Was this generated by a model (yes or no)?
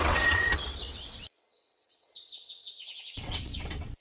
yes